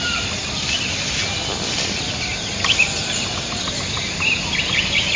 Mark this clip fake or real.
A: real